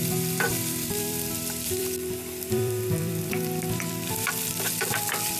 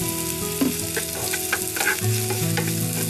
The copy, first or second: first